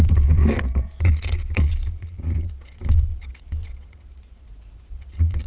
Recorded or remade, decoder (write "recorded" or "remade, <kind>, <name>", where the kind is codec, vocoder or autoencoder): remade, vocoder, Vocos